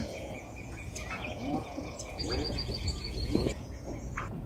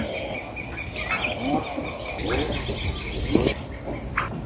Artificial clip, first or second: first